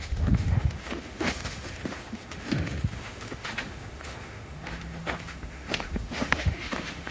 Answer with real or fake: fake